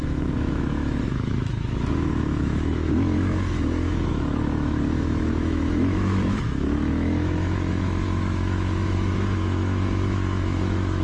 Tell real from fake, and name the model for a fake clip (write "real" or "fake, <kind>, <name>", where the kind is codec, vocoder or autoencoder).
fake, autoencoder, DAC-VAE